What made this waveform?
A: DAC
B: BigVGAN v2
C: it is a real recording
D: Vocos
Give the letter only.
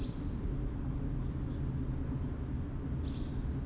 C